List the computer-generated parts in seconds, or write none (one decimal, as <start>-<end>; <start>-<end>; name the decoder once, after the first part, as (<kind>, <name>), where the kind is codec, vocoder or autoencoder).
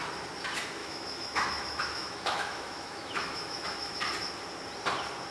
0.8-4.0 (autoencoder, DAC-VAE)